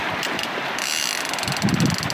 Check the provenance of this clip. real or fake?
real